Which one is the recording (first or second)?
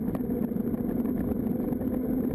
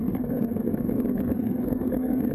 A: first